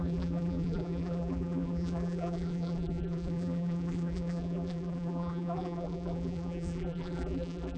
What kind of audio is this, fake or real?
fake